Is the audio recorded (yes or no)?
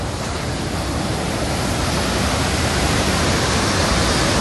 yes